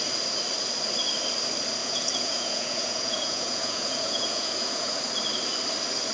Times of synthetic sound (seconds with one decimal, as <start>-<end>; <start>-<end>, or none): 1.8-5.0